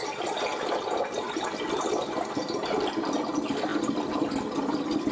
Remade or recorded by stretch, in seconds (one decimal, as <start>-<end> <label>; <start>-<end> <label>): 0.0-5.1 recorded